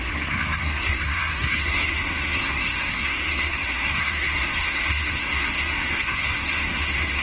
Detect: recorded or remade remade